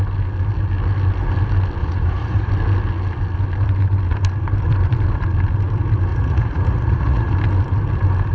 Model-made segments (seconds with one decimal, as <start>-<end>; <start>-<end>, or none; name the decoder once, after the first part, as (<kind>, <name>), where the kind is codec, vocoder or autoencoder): 1.8-2.5 (vocoder, Vocos); 6.1-7.3